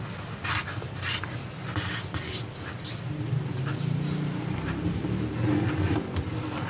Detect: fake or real fake